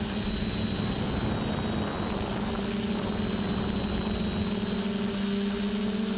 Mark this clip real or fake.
real